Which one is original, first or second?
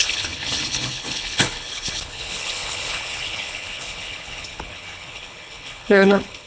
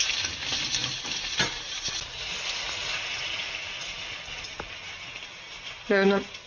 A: second